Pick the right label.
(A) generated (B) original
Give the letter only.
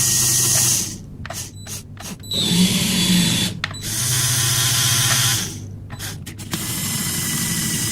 B